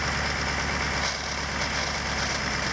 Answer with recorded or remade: recorded